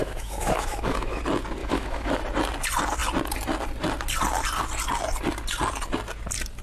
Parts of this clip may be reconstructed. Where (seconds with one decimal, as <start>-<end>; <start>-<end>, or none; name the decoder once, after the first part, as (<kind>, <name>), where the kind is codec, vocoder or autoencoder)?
0.0-1.2 (autoencoder, DAC-VAE); 1.6-2.2